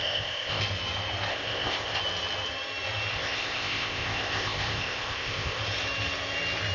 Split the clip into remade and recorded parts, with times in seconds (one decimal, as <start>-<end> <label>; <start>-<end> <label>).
0.0-0.6 remade; 0.6-1.3 recorded; 1.3-2.0 remade; 2.0-3.1 recorded; 3.1-5.6 remade; 5.6-6.7 recorded